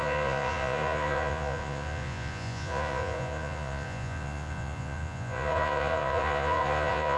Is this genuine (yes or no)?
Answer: no